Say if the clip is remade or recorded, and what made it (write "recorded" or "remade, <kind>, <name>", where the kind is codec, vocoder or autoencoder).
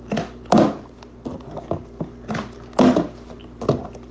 recorded